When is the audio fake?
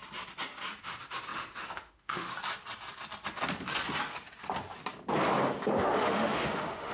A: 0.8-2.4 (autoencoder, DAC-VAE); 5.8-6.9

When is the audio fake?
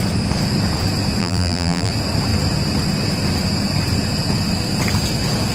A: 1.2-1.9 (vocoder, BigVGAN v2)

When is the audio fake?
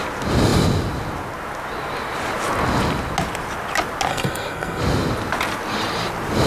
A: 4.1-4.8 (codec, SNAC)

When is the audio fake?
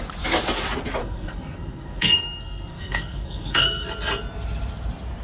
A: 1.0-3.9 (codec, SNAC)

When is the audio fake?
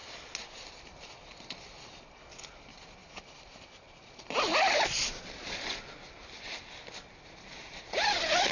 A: none